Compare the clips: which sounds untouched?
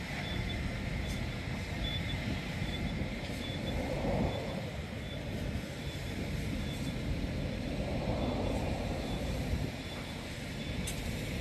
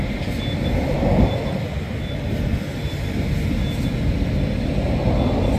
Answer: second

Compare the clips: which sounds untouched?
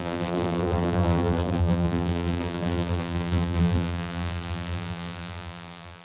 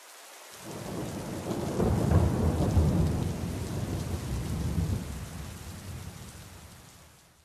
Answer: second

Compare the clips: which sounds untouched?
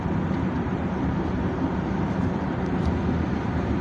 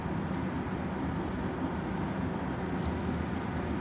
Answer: second